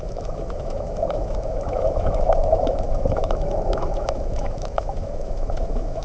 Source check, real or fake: fake